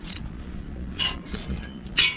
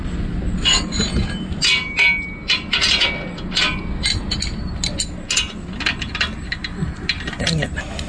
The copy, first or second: first